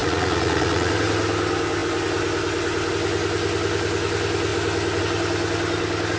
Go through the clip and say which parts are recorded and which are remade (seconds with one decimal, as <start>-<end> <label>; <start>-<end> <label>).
0.0-0.9 remade; 0.9-6.2 recorded